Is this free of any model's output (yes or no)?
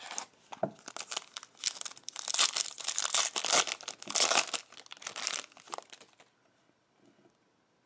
yes